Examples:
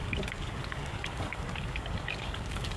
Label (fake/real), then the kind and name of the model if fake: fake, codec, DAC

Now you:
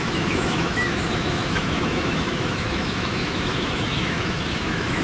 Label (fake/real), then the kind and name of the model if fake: fake, autoencoder, DAC-VAE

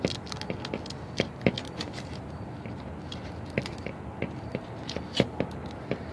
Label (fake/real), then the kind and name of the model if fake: real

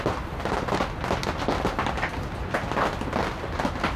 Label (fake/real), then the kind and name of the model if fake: real